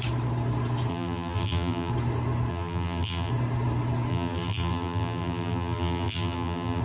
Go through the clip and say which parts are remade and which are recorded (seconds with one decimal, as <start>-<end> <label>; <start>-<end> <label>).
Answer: 0.0-0.9 recorded; 0.9-1.9 remade; 1.9-2.5 recorded; 2.5-3.3 remade; 3.3-4.1 recorded; 4.1-6.8 remade